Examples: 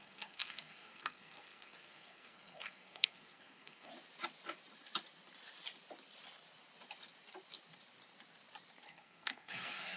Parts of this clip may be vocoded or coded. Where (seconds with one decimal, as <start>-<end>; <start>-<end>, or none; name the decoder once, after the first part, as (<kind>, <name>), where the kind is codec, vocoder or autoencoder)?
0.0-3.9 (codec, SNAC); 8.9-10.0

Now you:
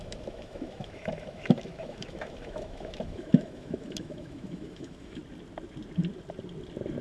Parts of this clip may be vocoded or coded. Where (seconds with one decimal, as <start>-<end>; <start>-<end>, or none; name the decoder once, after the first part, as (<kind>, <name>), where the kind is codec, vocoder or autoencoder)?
0.0-5.2 (autoencoder, DAC-VAE)

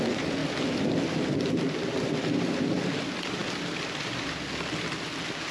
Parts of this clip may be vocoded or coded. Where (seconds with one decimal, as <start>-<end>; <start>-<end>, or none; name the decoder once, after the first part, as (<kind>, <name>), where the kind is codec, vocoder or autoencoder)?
none

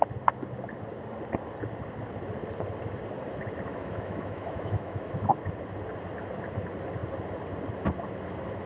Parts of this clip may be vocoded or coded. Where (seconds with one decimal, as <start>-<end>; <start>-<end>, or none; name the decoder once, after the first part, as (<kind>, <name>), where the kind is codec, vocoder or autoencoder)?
3.7-5.1 (autoencoder, DAC-VAE)

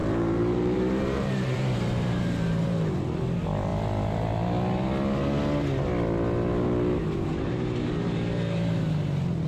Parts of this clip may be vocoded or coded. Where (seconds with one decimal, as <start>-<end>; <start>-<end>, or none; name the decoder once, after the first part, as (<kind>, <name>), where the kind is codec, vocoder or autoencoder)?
0.0-3.0 (vocoder, BigVGAN v2)

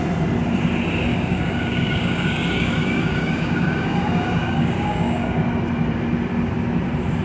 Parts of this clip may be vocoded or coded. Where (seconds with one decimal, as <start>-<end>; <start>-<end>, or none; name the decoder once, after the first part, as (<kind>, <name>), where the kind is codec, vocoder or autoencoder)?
1.1-5.4 (codec, DAC)